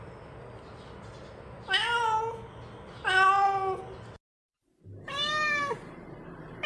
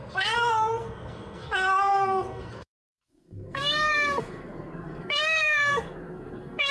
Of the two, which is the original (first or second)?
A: first